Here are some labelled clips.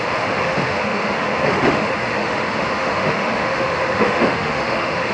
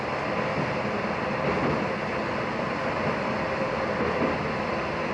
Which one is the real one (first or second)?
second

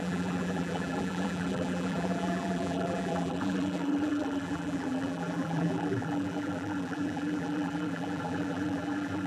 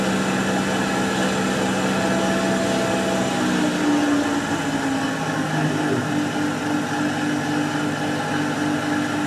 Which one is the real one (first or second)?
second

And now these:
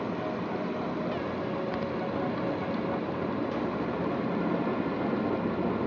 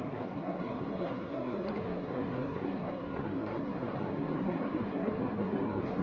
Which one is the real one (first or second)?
first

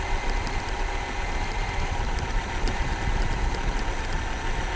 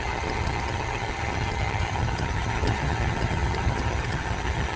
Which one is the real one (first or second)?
first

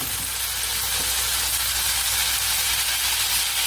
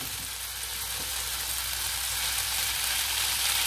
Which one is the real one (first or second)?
first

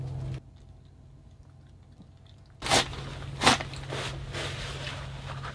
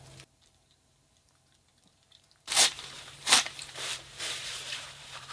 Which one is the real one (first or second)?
first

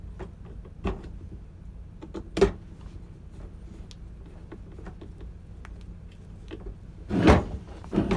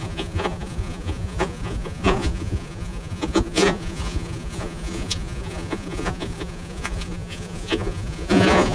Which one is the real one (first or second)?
first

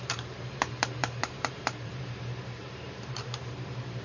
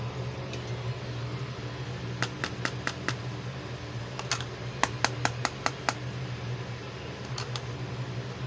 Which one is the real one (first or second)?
second